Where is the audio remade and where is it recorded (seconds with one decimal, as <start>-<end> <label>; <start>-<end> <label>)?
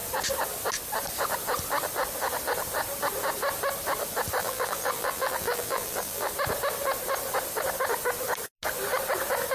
0.0-4.4 recorded; 4.4-6.3 remade; 6.3-9.5 recorded